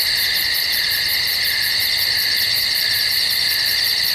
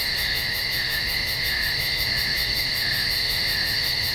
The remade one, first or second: second